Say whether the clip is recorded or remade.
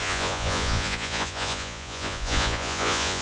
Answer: remade